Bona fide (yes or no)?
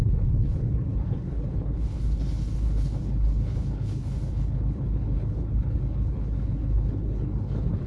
no